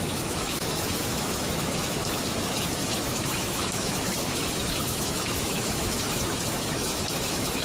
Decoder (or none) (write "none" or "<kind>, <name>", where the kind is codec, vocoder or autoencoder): autoencoder, DAC-VAE